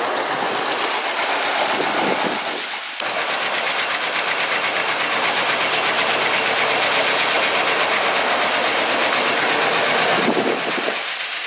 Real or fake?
real